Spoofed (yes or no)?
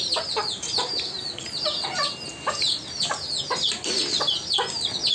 no